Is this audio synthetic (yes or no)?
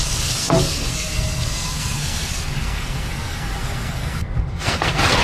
yes